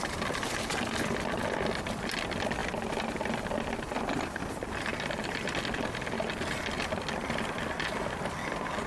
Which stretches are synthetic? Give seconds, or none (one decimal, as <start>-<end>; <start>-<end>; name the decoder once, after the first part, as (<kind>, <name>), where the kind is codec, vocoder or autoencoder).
none